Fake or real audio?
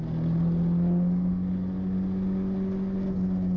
real